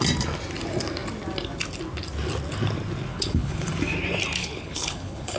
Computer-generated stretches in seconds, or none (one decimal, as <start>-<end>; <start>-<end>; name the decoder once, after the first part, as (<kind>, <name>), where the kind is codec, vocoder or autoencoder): 3.1-3.7 (codec, HILCodec); 4.4-5.4